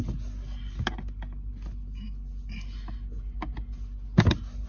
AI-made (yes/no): no